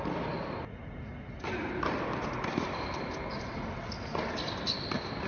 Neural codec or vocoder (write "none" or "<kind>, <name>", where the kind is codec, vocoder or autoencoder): none